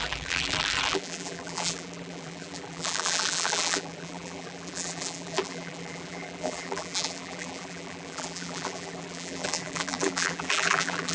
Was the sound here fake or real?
fake